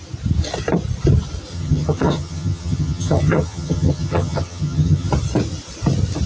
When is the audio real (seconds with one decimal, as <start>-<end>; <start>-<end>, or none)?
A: 0.0-1.5; 5.1-6.3

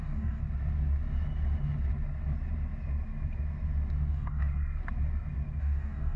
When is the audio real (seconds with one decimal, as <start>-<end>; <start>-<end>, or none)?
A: 0.4-4.1; 4.5-5.6

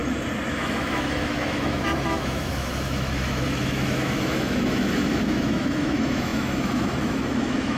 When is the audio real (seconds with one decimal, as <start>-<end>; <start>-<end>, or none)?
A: 0.0-0.5